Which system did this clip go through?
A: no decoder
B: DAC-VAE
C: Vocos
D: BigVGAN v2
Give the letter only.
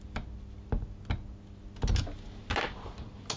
A